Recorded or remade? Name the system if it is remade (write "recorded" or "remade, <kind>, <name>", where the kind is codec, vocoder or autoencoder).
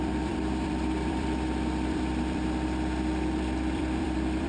remade, vocoder, BigVGAN v2